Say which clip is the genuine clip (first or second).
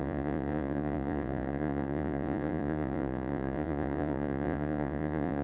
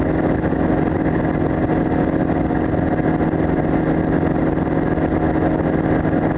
second